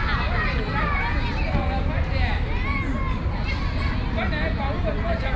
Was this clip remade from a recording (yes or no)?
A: no